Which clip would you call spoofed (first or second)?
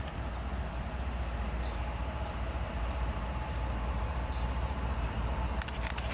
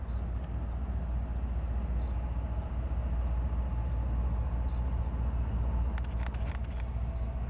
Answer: first